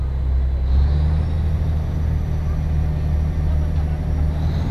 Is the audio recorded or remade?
recorded